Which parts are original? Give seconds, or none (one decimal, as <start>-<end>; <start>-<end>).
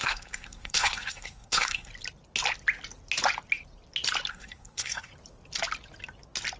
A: 1.9-4.3; 5.1-6.6